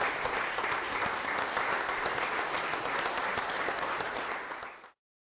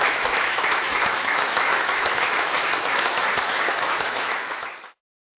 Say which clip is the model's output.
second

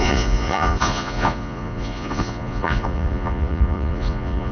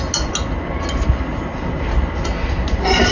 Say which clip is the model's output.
first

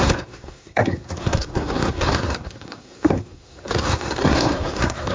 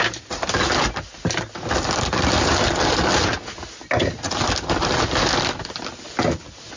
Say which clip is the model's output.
first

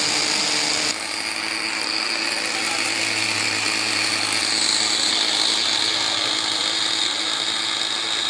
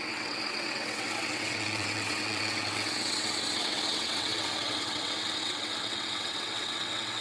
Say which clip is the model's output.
second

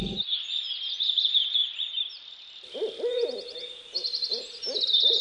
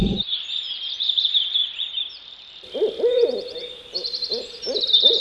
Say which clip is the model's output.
second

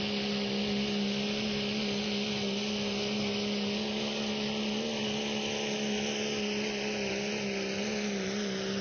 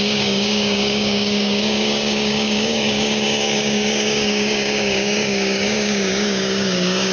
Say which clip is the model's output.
second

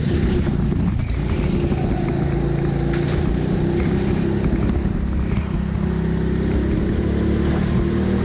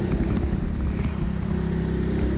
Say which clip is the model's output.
second